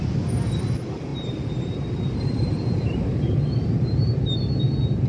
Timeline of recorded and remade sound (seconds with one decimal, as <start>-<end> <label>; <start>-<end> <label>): 0.0-1.1 recorded; 1.1-4.2 remade; 4.2-5.1 recorded